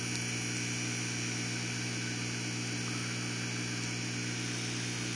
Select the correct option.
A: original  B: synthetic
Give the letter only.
A